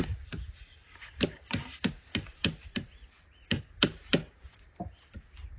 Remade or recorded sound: remade